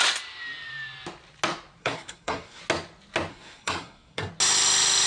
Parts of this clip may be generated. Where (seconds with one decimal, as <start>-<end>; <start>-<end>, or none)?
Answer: 1.8-2.6; 3.3-4.3